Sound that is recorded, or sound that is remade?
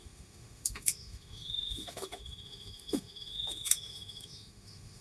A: remade